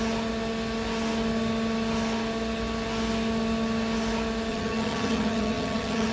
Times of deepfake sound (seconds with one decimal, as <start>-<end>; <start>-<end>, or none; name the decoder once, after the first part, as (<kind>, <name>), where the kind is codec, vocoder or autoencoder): 4.5-6.1 (vocoder, HiFi-GAN)